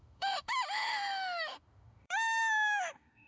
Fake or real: fake